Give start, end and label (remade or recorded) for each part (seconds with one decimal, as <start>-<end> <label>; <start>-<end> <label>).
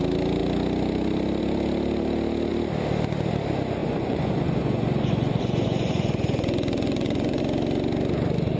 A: 0.0-3.8 recorded; 3.8-7.4 remade; 7.4-8.6 recorded